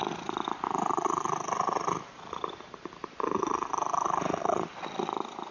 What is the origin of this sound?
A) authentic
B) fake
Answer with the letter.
A